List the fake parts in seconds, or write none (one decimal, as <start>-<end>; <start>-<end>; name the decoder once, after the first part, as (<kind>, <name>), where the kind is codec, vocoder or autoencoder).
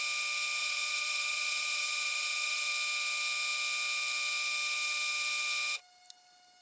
0.6-2.7 (vocoder, Vocos)